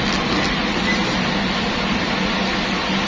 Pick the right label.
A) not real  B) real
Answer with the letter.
B